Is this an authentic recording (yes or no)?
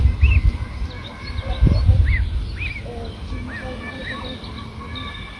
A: yes